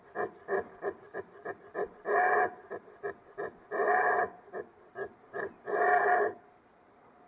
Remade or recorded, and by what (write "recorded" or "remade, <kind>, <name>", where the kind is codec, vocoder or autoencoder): recorded